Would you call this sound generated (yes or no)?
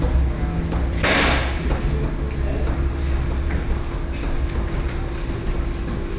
no